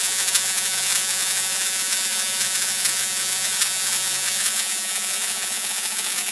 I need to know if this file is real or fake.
fake